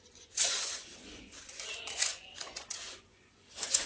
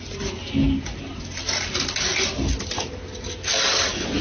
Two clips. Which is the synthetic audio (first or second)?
first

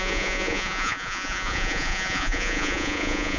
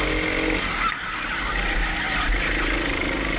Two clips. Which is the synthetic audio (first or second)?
first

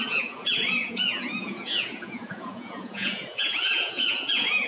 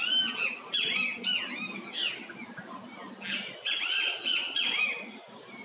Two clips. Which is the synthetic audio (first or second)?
first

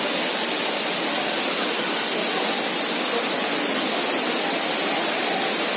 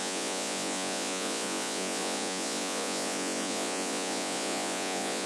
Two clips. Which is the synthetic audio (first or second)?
second